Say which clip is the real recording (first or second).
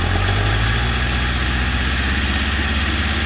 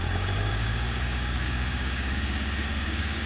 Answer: first